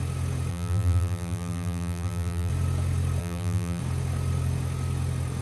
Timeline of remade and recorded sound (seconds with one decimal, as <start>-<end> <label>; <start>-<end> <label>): 0.0-0.5 recorded; 0.5-2.5 remade; 2.5-3.2 recorded; 3.2-3.8 remade; 3.8-5.4 recorded